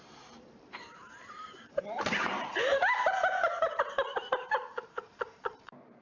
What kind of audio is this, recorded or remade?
remade